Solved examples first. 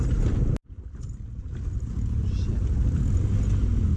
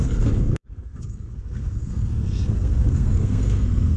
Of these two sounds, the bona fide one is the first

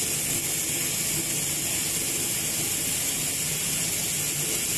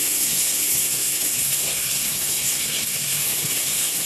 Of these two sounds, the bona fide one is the first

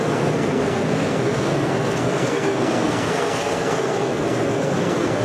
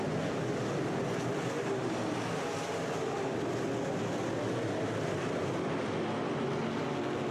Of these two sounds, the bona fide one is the second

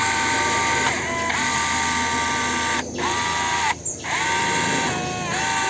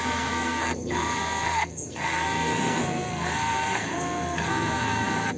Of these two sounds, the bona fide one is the first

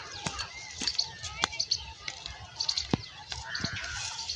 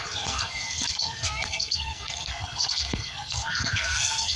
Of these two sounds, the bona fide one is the first